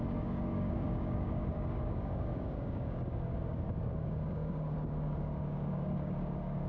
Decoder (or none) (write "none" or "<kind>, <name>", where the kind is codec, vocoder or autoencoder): codec, DAC